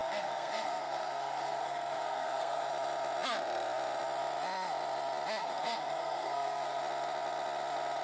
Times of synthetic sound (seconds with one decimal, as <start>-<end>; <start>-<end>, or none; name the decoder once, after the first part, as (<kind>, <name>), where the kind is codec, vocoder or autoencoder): 0.0-2.7 (codec, SNAC); 5.4-6.8